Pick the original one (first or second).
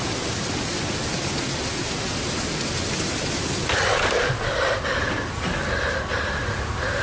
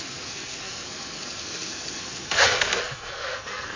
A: first